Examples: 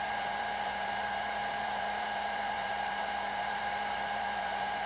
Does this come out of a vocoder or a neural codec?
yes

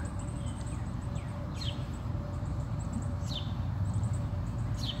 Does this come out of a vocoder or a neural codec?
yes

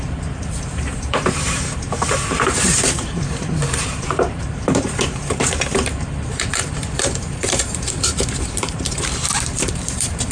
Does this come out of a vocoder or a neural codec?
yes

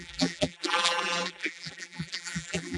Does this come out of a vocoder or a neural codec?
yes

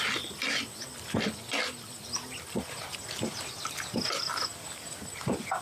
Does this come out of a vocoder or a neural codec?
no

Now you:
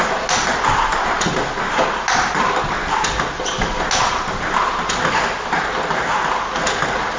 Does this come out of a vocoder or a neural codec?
no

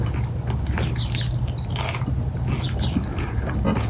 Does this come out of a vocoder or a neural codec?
no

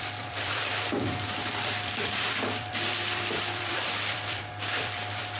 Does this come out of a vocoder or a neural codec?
yes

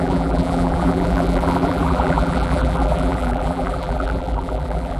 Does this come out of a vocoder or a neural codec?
yes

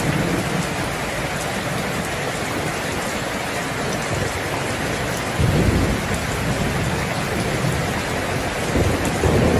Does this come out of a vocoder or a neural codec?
no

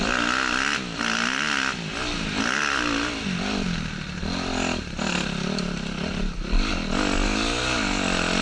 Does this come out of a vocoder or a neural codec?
no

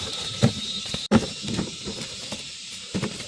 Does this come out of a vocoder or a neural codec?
yes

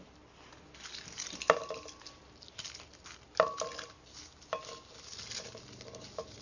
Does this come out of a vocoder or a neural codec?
no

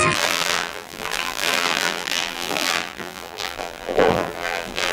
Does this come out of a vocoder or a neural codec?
yes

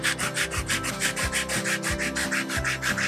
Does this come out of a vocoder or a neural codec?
no